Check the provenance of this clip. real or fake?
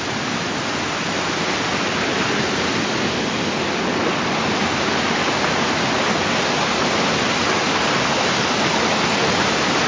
real